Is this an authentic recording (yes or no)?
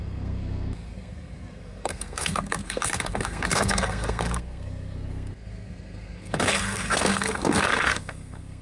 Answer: no